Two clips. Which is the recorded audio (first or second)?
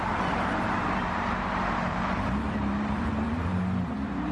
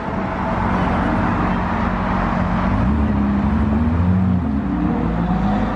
second